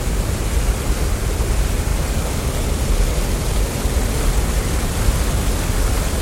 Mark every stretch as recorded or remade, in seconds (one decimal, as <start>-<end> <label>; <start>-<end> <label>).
0.0-6.2 recorded